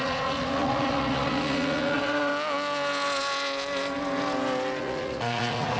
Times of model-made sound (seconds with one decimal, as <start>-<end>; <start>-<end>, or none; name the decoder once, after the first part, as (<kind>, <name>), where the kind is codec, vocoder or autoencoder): 0.0-2.3 (vocoder, Vocos); 4.8-5.8